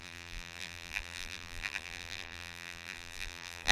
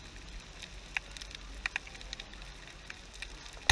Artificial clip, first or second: first